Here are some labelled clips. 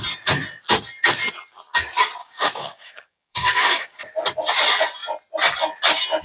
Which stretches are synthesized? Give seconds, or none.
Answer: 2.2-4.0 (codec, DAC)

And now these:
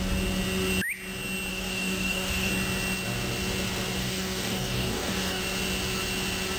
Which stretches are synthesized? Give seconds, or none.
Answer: 1.5-2.5 (codec, DAC); 4.0-5.4

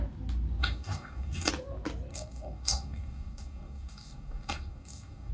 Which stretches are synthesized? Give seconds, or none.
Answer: 0.6-1.5 (codec, DAC); 2.1-5.3

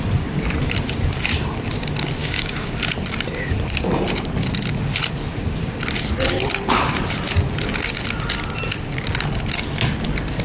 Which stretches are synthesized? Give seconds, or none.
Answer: 2.2-2.7 (codec, DAC)

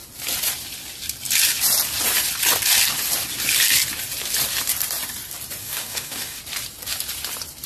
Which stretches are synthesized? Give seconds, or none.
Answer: 5.6-6.4 (codec, DAC)

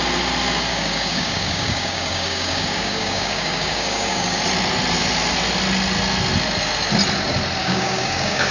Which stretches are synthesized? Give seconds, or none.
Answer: 0.7-4.4 (codec, DAC); 7.6-8.5

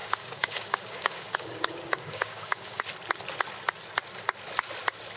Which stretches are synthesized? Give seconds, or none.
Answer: 0.0-2.8 (codec, DAC)